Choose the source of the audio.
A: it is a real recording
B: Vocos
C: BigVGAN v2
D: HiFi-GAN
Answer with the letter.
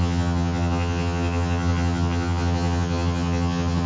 D